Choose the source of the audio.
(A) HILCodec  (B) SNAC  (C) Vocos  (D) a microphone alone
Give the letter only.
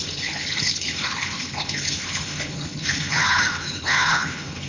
A